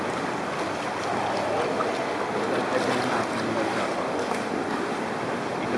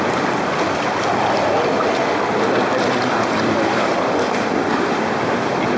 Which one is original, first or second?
first